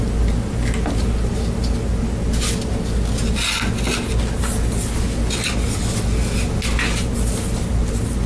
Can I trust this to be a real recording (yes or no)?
yes